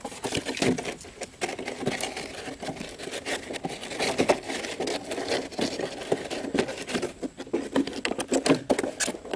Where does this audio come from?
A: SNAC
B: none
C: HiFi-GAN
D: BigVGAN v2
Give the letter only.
B